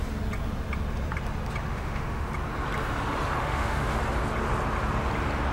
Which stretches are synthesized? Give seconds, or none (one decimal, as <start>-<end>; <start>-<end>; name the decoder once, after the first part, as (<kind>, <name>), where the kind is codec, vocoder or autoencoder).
1.7-2.3 (autoencoder, DAC-VAE); 3.4-4.0